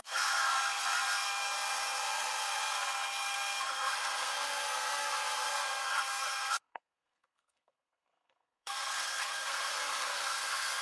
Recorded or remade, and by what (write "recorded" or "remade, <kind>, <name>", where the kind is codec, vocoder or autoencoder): remade, codec, SNAC